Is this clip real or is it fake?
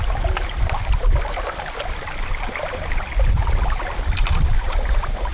real